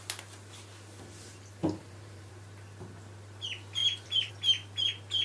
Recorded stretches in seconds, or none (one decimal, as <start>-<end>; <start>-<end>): 0.0-1.6; 2.3-3.8; 4.3-5.2